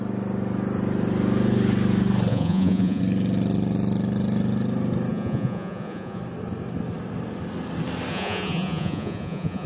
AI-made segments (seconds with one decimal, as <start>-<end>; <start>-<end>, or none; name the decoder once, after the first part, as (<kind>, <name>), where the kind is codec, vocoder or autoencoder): 2.3-3.0 (vocoder, Vocos); 5.1-6.2; 8.1-9.7